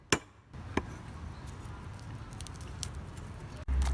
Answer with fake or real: real